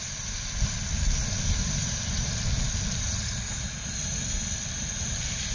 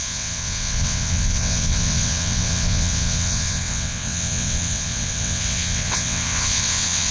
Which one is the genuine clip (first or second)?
first